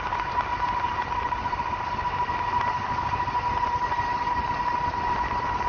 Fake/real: real